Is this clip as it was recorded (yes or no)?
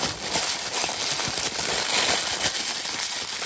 yes